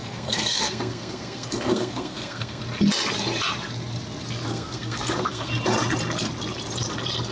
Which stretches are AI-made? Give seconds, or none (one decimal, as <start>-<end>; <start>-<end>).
0.0-2.6; 4.5-5.5